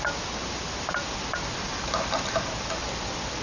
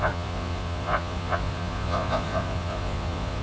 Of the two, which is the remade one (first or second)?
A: second